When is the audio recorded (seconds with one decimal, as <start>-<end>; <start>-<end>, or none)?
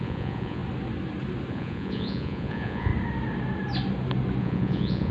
0.6-1.5; 2.9-4.4